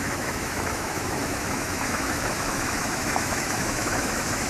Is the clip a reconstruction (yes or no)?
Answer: yes